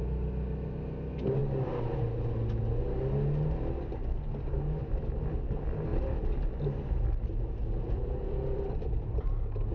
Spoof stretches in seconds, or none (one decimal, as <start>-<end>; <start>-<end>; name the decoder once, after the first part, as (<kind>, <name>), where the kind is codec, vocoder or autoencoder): 5.9-9.7 (vocoder, BigVGAN v2)